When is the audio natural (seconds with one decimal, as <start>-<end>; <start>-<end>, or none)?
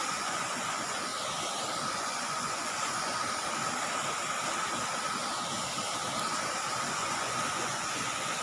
1.1-1.9; 3.2-6.9